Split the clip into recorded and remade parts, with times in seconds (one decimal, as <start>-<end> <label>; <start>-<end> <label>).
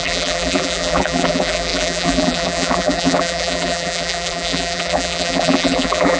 0.0-6.2 remade